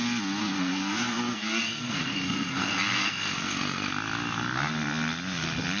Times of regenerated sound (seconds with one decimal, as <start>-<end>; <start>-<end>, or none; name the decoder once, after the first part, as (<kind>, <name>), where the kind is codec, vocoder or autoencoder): 0.4-3.9 (codec, SNAC)